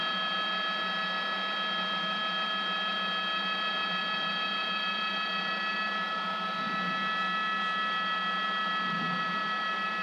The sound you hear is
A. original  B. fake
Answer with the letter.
A